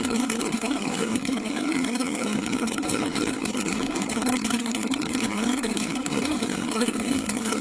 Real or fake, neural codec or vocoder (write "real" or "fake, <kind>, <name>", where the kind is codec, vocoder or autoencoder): fake, codec, SNAC